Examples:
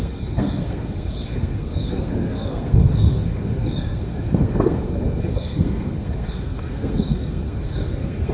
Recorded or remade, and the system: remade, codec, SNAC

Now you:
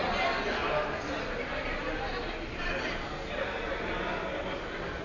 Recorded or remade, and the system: recorded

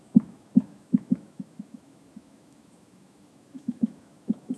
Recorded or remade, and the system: remade, autoencoder, DAC-VAE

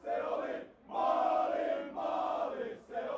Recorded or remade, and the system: recorded